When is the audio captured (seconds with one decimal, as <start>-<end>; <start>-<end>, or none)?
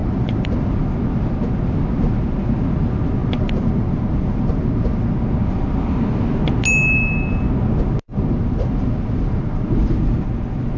0.7-3.2; 5.0-8.1; 10.0-10.8